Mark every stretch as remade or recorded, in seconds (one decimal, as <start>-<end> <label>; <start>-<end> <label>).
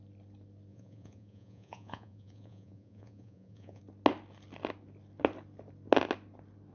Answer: 0.0-0.7 recorded; 0.7-3.8 remade; 3.8-6.7 recorded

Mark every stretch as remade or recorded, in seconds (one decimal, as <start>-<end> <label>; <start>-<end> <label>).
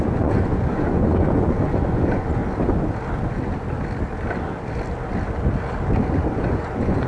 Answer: 0.0-2.4 remade; 2.4-6.3 recorded; 6.3-7.1 remade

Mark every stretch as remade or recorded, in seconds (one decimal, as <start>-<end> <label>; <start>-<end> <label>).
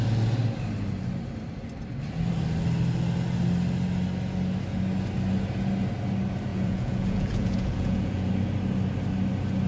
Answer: 0.0-6.5 recorded; 6.5-8.3 remade; 8.3-9.7 recorded